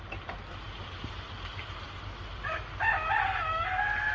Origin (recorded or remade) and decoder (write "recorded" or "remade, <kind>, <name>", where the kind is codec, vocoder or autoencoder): recorded